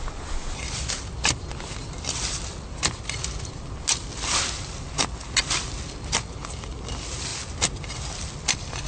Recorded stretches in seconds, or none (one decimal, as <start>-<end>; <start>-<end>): 0.0-8.9